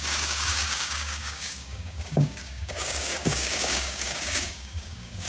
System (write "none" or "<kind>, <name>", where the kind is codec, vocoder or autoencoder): codec, DAC